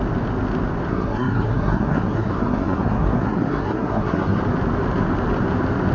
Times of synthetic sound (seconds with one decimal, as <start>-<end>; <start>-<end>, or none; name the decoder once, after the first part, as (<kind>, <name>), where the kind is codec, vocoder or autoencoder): 0.9-4.4 (codec, SNAC)

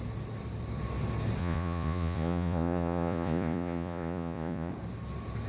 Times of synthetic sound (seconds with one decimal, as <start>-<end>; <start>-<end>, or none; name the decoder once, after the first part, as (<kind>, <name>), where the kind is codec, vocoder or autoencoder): 1.4-4.7 (vocoder, Vocos)

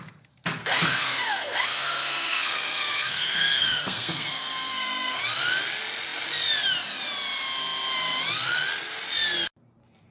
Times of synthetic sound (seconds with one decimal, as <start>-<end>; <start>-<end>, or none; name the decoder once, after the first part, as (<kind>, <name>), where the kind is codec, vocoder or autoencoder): 0.6-5.2 (codec, SNAC)

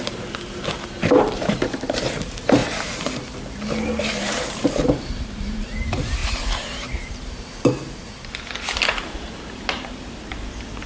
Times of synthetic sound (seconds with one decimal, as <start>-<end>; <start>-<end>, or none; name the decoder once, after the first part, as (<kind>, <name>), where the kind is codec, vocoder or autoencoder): 0.0-2.6 (vocoder, BigVGAN v2); 4.0-8.1; 8.8-10.9

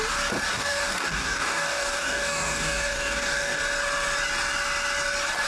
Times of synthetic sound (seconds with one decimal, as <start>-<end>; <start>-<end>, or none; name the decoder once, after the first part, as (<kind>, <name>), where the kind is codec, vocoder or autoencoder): 0.5-3.6 (codec, DAC)

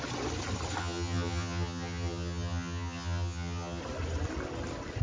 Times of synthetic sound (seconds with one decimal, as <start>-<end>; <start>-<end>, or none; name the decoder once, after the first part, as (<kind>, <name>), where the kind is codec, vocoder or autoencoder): 0.8-3.8 (vocoder, HiFi-GAN)